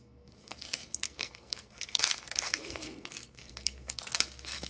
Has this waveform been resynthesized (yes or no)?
yes